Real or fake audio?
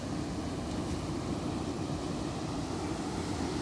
real